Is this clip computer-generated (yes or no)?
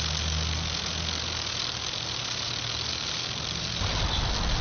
no